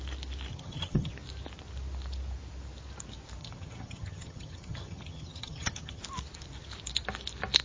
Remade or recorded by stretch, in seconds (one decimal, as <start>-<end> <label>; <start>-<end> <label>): 0.0-0.5 recorded; 0.5-1.1 remade; 1.1-3.4 recorded; 3.4-6.0 remade; 6.0-7.6 recorded